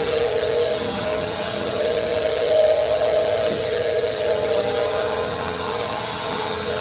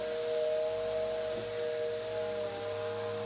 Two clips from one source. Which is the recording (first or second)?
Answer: second